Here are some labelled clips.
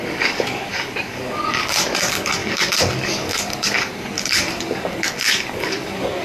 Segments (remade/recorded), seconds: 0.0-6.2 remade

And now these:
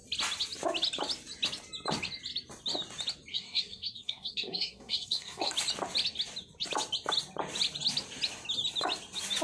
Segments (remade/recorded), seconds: 0.0-3.3 recorded; 3.3-5.5 remade; 5.5-9.4 recorded